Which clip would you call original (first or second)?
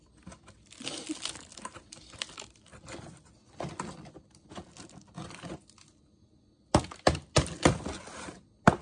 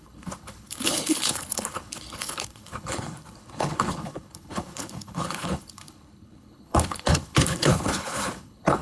first